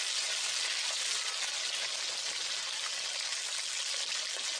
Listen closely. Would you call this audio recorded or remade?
recorded